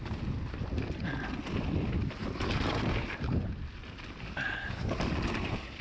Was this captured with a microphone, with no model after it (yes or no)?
yes